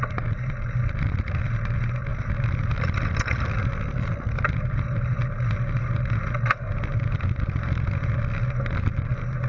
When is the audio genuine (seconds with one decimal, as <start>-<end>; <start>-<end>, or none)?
0.0-9.5